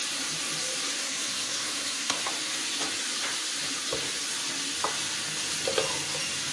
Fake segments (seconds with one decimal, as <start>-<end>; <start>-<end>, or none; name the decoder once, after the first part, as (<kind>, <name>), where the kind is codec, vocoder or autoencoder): 1.0-2.3 (codec, SNAC)